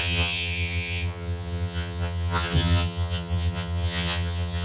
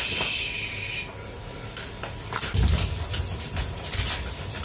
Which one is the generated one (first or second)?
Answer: first